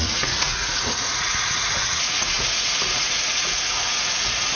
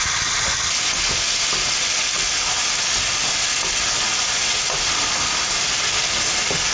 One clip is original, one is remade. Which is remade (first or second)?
first